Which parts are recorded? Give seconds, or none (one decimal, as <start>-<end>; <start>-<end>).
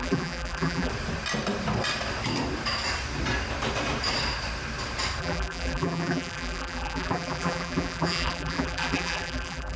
0.9-5.2